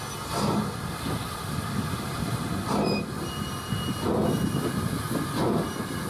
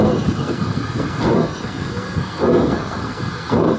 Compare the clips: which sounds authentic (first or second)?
first